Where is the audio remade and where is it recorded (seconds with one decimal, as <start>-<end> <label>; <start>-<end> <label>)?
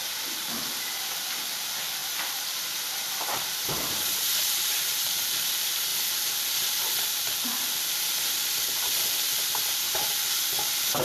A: 0.0-2.0 recorded; 2.0-5.1 remade; 5.1-11.0 recorded